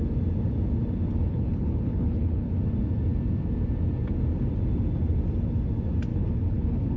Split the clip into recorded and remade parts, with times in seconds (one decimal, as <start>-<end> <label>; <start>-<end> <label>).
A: 0.0-1.3 recorded; 1.3-2.5 remade; 2.5-6.1 recorded; 6.1-7.0 remade